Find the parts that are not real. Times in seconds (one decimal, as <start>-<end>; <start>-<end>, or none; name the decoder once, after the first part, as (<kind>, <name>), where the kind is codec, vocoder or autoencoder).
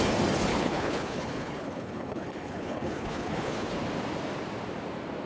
0.5-3.7 (codec, HILCodec)